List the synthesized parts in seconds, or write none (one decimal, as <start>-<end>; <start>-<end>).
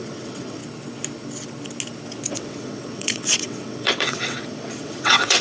0.0-0.6; 2.3-5.4